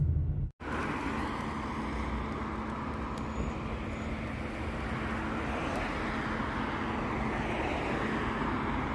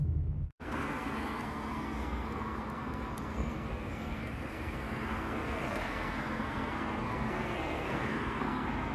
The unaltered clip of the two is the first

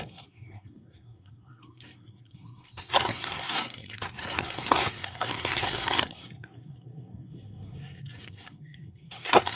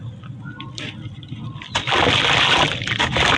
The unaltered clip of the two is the second